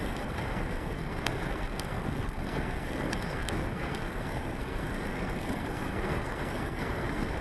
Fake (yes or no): yes